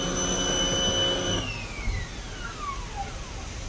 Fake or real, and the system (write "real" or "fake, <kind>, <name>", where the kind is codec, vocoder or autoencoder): real